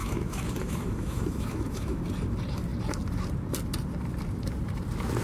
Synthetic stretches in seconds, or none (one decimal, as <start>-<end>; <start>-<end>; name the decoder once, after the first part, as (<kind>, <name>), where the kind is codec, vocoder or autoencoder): 0.0-2.0 (autoencoder, DAC-VAE)